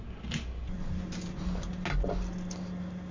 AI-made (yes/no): no